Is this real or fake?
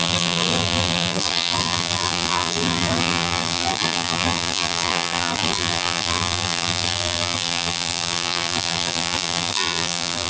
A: fake